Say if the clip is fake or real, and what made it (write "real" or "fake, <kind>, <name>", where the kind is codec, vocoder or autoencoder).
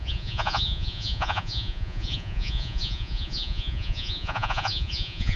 fake, vocoder, Vocos